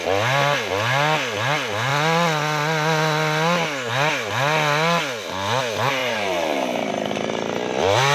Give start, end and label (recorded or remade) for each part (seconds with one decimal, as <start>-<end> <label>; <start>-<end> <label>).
0.0-6.0 recorded; 6.0-6.9 remade; 6.9-8.1 recorded